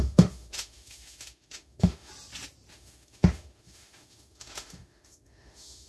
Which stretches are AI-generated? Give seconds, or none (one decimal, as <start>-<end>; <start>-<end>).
0.0-2.1; 2.7-5.9